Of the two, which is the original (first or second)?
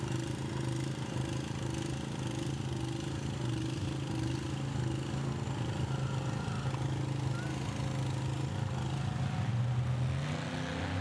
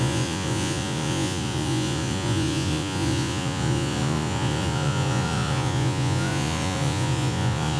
first